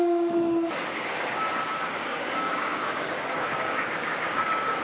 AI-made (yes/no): yes